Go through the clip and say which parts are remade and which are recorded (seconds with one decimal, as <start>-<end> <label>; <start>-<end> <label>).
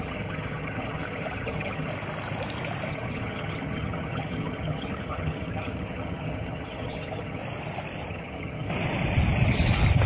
0.0-1.9 remade; 1.9-2.9 recorded; 2.9-7.4 remade; 7.4-8.1 recorded; 8.1-8.7 remade; 8.7-10.1 recorded